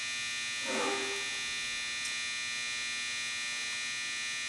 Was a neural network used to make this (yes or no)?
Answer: no